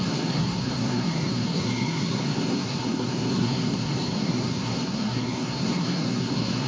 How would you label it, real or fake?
fake